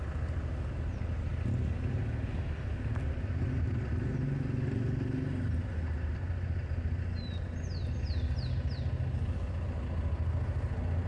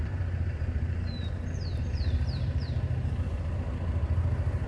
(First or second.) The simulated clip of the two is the second